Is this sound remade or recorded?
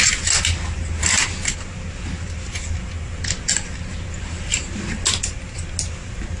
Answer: recorded